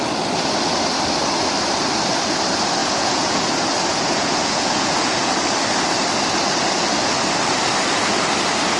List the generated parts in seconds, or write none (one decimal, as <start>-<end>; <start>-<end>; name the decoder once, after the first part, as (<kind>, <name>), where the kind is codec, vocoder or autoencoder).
2.8-3.4 (vocoder, Vocos); 3.9-5.3